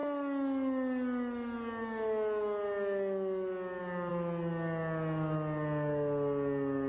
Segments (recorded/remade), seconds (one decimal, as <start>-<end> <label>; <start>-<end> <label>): 0.0-6.9 recorded